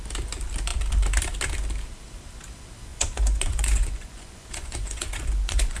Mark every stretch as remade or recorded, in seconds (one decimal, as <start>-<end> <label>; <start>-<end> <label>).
0.0-2.9 recorded; 2.9-5.8 remade